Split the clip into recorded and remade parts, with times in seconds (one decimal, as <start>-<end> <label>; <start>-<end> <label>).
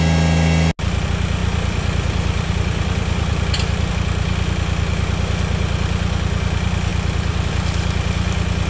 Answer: 0.0-1.4 recorded; 1.4-3.9 remade; 3.9-6.9 recorded; 6.9-7.5 remade; 7.5-8.7 recorded